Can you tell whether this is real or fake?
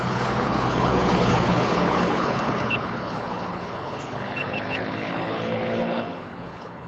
fake